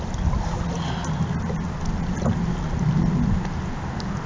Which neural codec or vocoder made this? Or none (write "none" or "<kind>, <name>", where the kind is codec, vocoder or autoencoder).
none